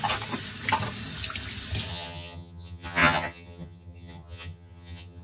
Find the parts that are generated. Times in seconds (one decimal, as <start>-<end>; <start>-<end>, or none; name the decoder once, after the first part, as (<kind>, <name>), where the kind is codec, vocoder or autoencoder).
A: 1.9-5.2 (vocoder, HiFi-GAN)